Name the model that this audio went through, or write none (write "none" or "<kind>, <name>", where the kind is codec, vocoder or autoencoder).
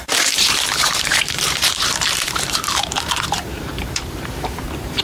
vocoder, BigVGAN v2